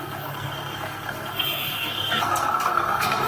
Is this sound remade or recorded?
remade